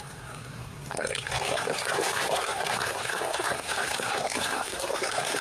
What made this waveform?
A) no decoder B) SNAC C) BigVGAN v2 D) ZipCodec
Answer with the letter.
B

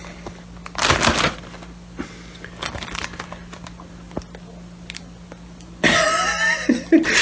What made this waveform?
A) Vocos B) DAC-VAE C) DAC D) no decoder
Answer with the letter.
D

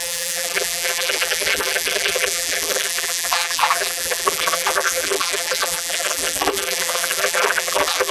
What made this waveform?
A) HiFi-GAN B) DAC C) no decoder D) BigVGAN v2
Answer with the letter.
D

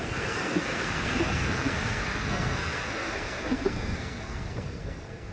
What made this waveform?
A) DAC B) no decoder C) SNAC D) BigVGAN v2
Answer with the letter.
C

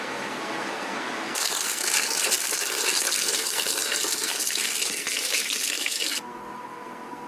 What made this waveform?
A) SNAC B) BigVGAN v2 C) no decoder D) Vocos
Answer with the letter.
A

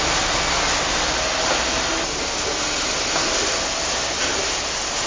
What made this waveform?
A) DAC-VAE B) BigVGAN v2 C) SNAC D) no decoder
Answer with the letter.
D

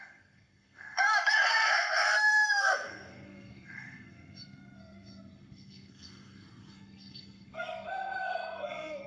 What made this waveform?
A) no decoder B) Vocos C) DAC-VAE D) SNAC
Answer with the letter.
D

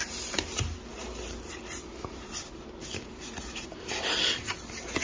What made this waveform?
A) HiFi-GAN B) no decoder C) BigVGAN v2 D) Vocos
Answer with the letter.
B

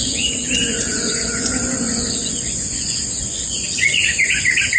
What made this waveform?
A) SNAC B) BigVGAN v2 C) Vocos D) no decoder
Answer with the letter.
C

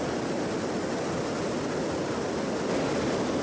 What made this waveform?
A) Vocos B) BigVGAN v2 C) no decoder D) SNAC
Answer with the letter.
C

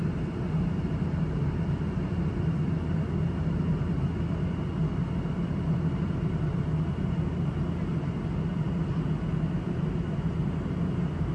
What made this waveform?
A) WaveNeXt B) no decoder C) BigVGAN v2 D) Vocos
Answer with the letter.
B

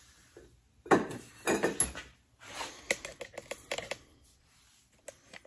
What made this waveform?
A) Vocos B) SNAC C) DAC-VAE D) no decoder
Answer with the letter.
D